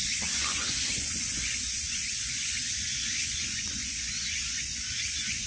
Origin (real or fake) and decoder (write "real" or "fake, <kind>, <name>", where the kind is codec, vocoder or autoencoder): fake, vocoder, Vocos